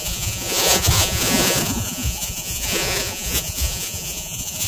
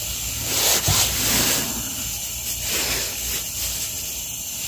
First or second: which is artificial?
first